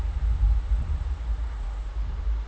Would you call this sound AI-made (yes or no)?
no